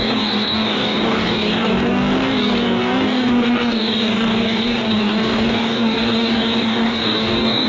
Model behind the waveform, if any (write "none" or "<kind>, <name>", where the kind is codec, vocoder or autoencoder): codec, DAC